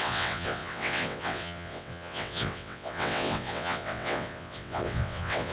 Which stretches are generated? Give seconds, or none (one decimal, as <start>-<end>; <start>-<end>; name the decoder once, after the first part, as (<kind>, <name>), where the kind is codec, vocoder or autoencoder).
0.0-5.5 (vocoder, WaveNeXt)